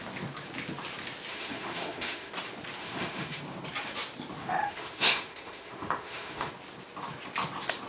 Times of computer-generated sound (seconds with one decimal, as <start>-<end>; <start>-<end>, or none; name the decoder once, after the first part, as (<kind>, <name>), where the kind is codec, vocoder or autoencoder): 1.3-2.3 (autoencoder, DAC-VAE); 2.8-3.4; 4.4-6.5